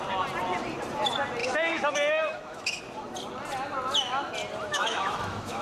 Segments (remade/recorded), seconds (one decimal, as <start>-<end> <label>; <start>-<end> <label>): 0.0-1.4 recorded; 1.4-2.8 remade; 2.8-4.7 recorded; 4.7-5.6 remade